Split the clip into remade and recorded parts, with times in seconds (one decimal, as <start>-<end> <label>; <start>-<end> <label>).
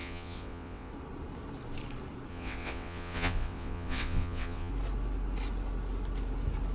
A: 0.0-0.9 remade; 0.9-2.3 recorded; 2.3-4.7 remade; 4.7-6.7 recorded